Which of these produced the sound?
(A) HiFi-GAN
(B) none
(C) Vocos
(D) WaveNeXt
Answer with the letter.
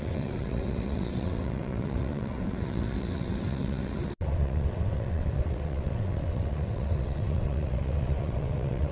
D